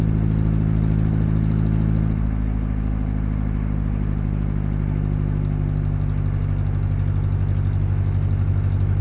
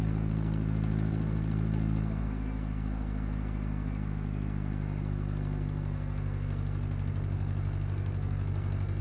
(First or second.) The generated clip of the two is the second